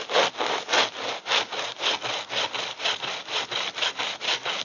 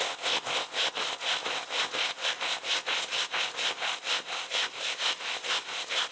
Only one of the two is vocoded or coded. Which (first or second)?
second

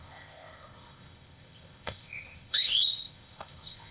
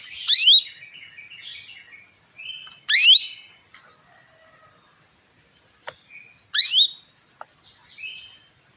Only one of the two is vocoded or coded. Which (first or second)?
first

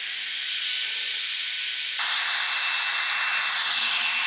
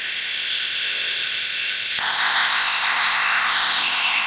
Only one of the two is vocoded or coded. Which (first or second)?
second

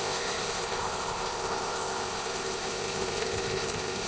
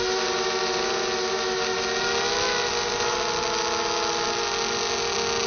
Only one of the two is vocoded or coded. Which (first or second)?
first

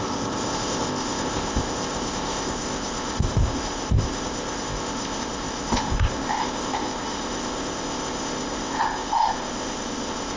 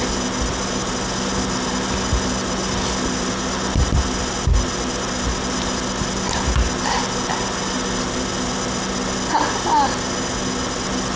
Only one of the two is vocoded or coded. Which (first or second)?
first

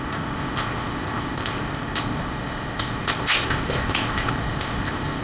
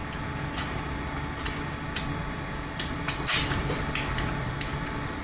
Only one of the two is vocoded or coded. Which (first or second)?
first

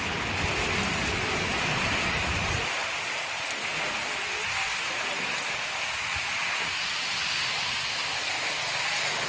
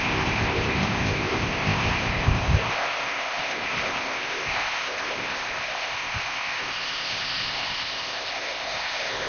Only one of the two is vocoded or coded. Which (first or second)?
second